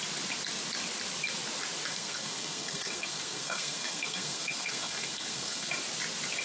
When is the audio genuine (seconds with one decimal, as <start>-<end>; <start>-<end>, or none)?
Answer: 0.0-1.9; 5.7-6.4